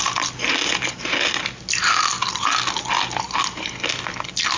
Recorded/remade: recorded